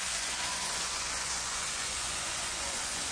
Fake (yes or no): yes